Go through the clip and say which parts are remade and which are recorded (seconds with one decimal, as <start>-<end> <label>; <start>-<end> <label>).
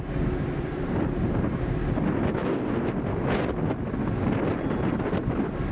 0.0-2.4 remade; 2.4-5.2 recorded; 5.2-5.7 remade